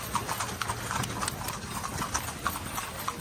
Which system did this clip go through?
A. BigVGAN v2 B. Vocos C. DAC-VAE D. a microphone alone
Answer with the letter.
D